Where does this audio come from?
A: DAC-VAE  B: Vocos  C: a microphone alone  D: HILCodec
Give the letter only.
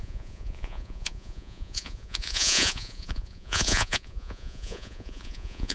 B